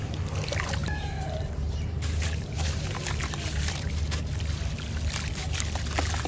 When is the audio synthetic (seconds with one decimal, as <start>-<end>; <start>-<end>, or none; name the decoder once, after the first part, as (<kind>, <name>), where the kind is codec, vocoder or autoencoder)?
0.8-3.9 (vocoder, BigVGAN v2)